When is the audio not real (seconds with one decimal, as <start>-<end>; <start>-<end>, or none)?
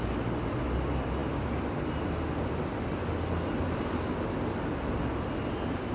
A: none